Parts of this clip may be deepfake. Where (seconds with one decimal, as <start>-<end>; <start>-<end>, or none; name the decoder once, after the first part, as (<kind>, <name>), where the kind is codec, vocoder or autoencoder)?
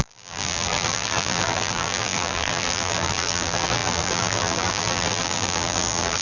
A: 0.0-6.2 (vocoder, BigVGAN v2)